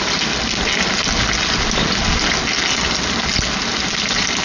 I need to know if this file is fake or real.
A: real